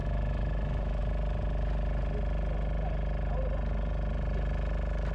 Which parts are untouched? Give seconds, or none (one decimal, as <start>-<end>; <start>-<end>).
1.0-5.1